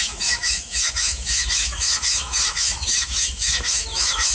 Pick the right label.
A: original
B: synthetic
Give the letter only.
B